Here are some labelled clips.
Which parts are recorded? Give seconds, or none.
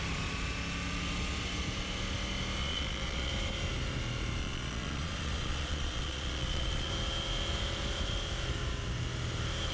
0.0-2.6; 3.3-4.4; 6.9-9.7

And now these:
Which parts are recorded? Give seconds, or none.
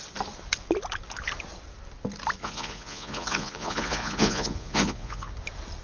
0.0-2.4; 5.3-5.8